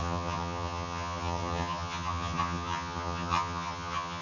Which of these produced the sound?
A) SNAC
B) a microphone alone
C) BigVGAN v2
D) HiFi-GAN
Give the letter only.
D